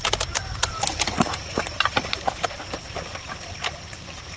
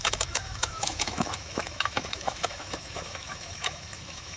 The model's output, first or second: second